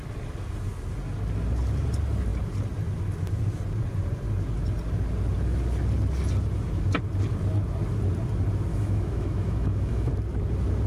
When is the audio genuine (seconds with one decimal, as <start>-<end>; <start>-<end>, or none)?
0.0-8.7; 10.1-10.9

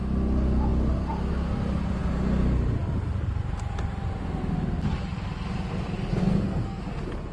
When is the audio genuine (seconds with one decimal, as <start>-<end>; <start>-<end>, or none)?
0.0-6.2; 6.8-7.3